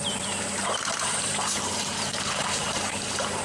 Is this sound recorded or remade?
remade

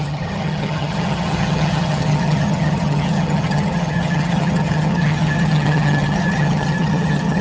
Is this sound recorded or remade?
remade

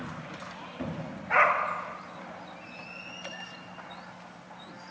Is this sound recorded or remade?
recorded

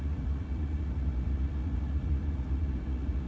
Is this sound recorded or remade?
remade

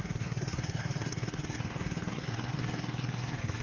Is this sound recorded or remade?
remade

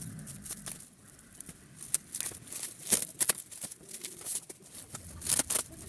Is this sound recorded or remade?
recorded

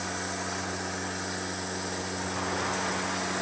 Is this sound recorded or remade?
recorded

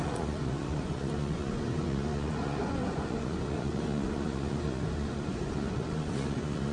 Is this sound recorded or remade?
remade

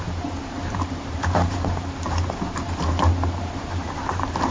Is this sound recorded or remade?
remade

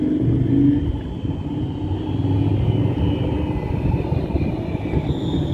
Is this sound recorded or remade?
recorded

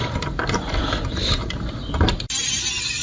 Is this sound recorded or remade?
recorded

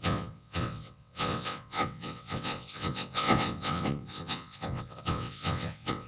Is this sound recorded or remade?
remade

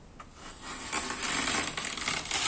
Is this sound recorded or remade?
recorded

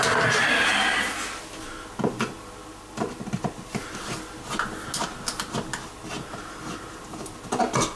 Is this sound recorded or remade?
recorded